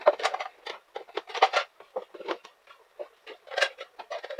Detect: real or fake real